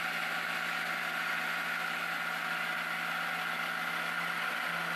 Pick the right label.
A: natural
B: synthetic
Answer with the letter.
A